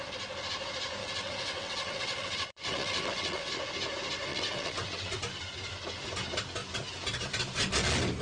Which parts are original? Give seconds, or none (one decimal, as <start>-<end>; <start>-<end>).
0.0-1.0; 3.5-4.3; 5.1-8.2

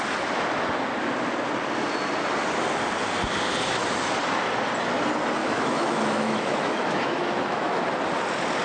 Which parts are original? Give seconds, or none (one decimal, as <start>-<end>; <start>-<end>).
0.0-5.4; 7.8-8.6

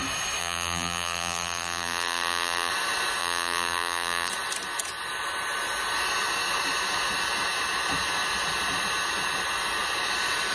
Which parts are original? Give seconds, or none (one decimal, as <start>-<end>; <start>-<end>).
0.0-0.4; 2.7-3.2; 4.3-10.5

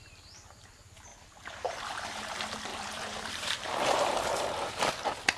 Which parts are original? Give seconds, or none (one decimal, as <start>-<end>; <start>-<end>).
0.0-1.1; 2.2-2.7; 4.7-5.4

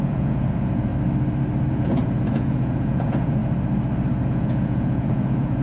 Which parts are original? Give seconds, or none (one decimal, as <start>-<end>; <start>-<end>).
0.9-1.7; 3.4-4.3